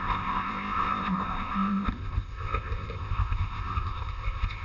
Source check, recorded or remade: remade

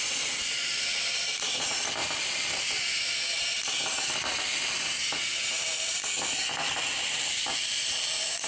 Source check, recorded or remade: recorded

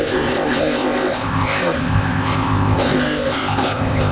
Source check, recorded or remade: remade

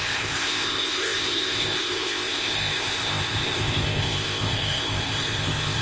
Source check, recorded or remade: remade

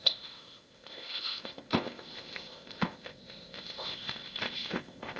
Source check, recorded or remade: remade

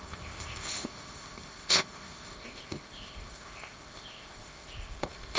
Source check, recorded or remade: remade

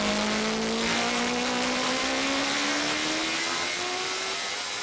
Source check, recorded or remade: recorded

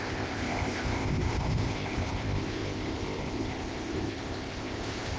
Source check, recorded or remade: remade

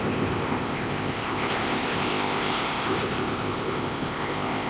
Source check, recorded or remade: remade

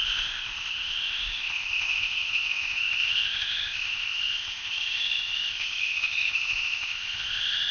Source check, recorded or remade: remade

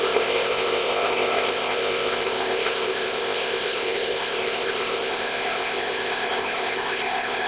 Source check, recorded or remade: remade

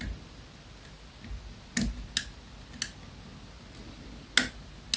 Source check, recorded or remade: recorded